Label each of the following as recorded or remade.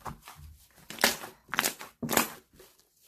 remade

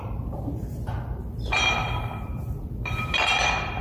remade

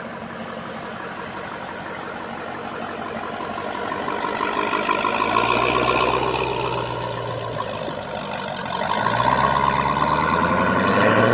recorded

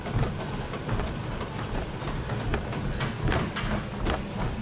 recorded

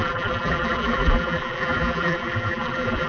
remade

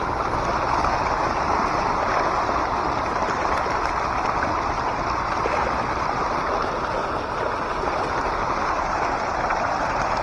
recorded